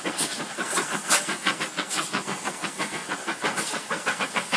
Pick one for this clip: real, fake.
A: fake